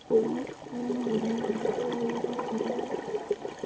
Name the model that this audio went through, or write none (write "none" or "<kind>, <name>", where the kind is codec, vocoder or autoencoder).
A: none